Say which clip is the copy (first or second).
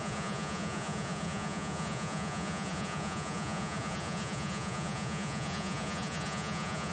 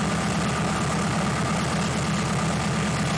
first